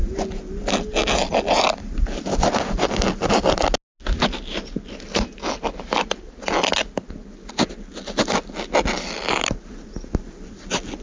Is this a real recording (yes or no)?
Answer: yes